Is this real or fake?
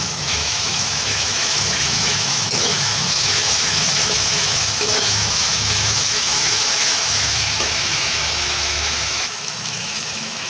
fake